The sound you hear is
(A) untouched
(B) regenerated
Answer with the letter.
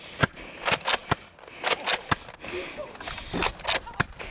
A